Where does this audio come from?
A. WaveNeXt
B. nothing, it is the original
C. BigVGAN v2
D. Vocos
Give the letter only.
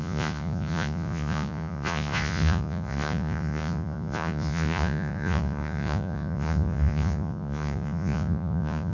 D